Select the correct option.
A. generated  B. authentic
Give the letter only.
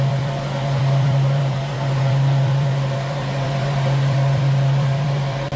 A